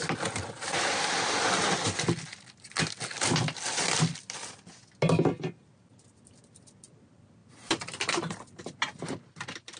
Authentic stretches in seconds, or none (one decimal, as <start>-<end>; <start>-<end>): 0.0-7.4; 8.6-9.8